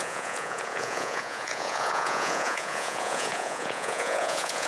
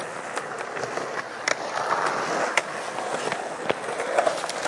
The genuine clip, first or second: second